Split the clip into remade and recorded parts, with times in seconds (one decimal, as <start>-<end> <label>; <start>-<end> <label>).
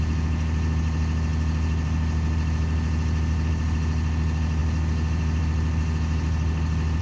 0.0-7.0 recorded